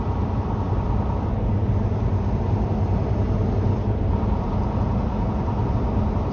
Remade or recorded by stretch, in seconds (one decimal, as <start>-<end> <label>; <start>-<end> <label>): 0.0-6.3 recorded